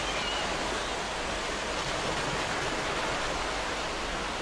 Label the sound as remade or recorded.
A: recorded